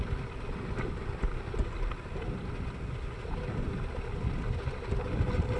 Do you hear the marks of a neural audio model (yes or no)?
no